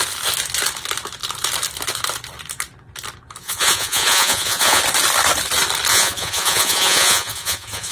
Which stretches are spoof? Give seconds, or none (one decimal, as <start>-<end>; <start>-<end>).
3.4-4.8; 5.9-7.9